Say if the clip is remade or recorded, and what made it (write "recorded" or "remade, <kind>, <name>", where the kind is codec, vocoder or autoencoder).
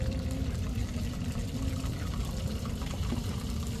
remade, vocoder, BigVGAN v2